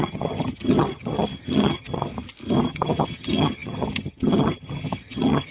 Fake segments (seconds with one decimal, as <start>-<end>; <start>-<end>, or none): 0.0-2.1; 2.7-5.5